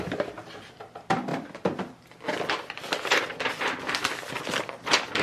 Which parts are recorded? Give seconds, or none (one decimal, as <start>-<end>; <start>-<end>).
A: 0.0-5.2